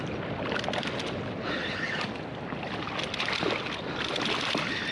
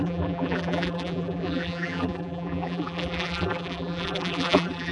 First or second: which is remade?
second